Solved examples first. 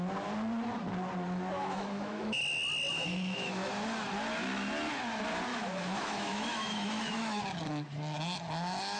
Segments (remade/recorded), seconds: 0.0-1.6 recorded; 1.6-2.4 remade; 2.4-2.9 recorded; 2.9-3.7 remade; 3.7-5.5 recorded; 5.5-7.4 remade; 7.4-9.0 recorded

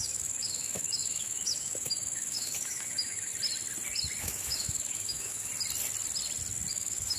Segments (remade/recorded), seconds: 0.0-3.3 remade; 3.3-4.2 recorded; 4.2-5.5 remade; 5.5-6.7 recorded; 6.7-7.2 remade

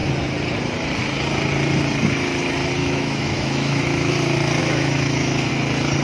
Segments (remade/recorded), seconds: 0.0-2.8 recorded; 2.8-4.1 remade; 4.1-4.6 recorded; 4.6-5.5 remade; 5.5-6.0 recorded

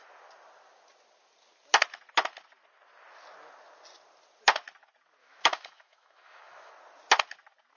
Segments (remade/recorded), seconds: 0.0-5.2 recorded; 5.2-6.7 remade; 6.7-7.8 recorded

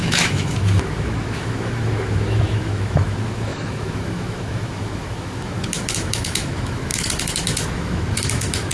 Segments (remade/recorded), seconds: 0.0-8.7 remade

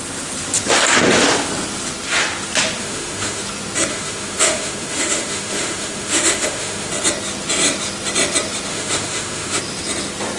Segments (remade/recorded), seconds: 0.0-2.8 recorded; 2.8-3.4 remade; 3.4-3.9 recorded; 3.9-6.9 remade; 6.9-8.7 recorded; 8.7-9.6 remade; 9.6-10.4 recorded